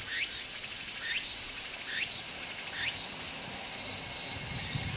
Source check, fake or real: real